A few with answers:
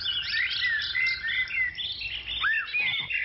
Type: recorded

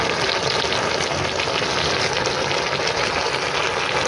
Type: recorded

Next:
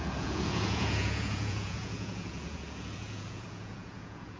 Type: remade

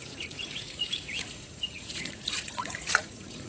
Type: remade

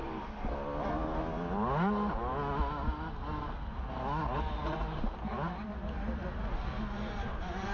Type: recorded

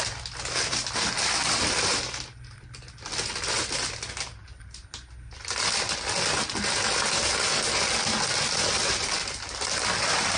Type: recorded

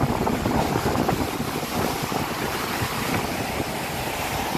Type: recorded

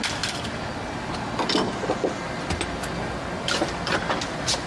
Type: recorded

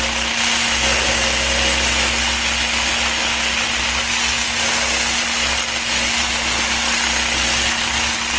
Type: recorded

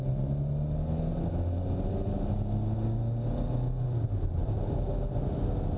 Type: recorded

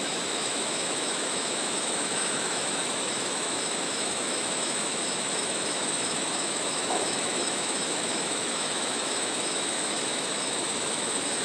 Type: remade